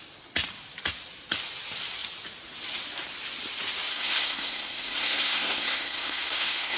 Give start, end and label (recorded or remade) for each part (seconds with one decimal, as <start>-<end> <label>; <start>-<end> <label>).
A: 0.0-3.9 recorded; 3.9-6.8 remade